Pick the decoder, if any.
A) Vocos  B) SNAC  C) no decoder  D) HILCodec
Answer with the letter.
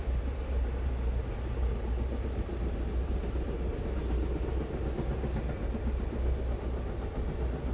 C